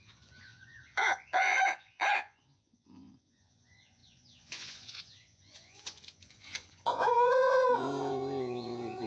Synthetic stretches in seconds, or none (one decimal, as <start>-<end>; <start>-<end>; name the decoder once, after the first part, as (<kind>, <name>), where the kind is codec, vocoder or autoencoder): 0.0-9.1 (vocoder, Vocos)